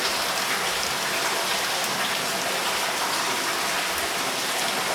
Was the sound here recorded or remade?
recorded